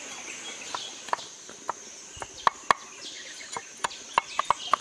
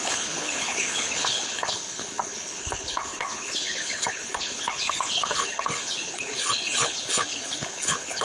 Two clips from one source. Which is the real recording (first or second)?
first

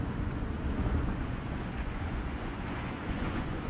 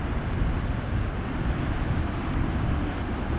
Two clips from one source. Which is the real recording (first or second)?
second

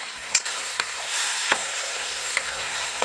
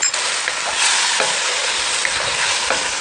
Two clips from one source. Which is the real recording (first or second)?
second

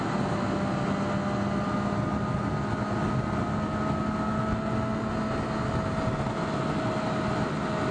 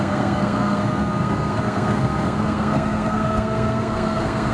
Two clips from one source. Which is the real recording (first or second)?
first